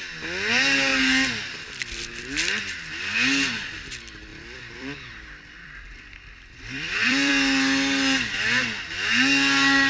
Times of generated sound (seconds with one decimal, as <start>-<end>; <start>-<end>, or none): 4.3-7.3